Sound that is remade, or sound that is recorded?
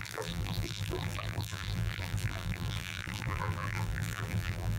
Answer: remade